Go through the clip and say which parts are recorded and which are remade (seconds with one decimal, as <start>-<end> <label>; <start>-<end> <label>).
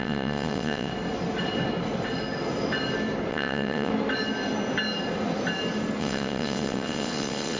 0.0-0.9 remade; 0.9-3.3 recorded; 3.3-3.9 remade; 3.9-6.0 recorded; 6.0-7.6 remade